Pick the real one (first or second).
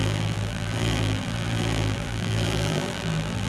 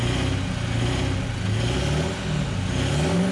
second